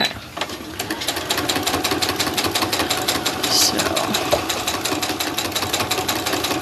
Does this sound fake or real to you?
real